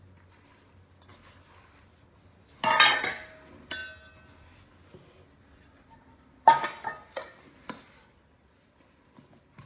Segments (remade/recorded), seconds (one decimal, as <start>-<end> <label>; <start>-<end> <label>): 0.0-9.7 recorded

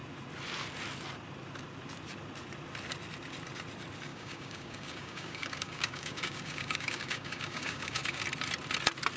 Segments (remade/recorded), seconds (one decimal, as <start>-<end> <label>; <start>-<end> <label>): 0.0-4.1 recorded; 4.1-8.2 remade; 8.2-9.2 recorded

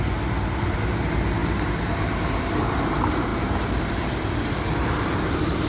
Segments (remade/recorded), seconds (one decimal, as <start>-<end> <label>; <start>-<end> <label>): 0.0-5.7 remade

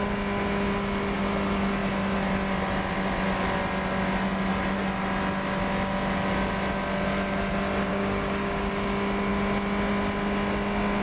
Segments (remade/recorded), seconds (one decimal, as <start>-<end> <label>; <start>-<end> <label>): 0.0-7.9 recorded; 7.9-8.7 remade; 8.7-11.0 recorded

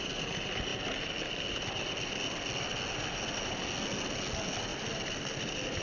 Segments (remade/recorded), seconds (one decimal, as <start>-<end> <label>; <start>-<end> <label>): 0.0-5.8 recorded

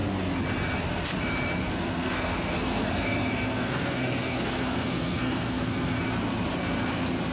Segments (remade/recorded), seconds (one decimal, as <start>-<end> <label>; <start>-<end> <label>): 0.0-1.6 recorded; 1.6-6.0 remade; 6.0-7.3 recorded